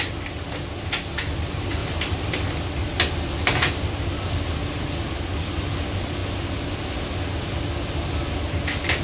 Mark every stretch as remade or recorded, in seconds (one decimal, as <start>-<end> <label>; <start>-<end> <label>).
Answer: 0.0-1.8 recorded; 1.8-2.4 remade; 2.4-9.0 recorded